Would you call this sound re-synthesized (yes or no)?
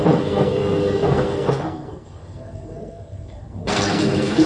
yes